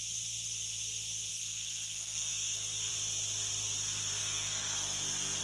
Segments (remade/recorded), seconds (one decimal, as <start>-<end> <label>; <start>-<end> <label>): 0.0-1.3 recorded; 1.3-2.9 remade; 2.9-4.2 recorded; 4.2-5.4 remade